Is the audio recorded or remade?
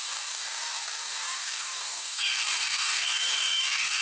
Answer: remade